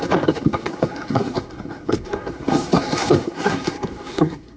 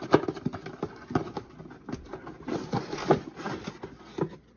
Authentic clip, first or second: second